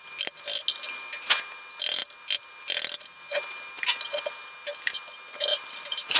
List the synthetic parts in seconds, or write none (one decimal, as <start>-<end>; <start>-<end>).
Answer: 5.5-6.2